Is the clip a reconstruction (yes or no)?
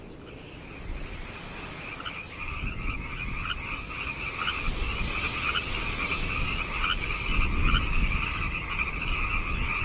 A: no